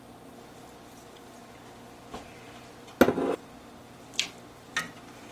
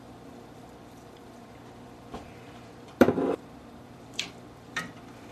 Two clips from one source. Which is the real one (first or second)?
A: first